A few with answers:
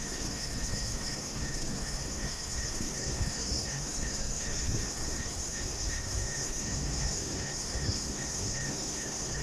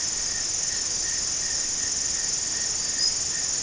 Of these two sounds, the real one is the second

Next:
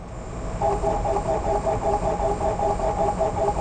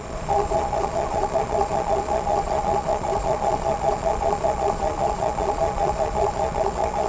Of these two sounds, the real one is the first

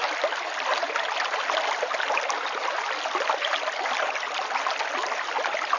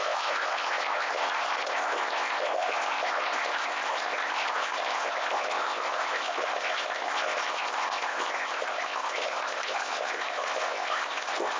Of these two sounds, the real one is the first